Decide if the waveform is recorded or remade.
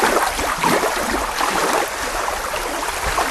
recorded